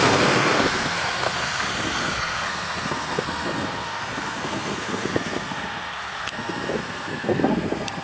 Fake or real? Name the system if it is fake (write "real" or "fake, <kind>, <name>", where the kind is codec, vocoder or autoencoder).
fake, codec, SNAC